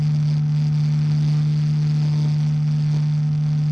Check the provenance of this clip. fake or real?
real